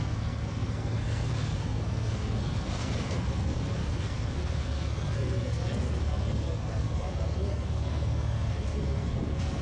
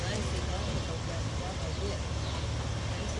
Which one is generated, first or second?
first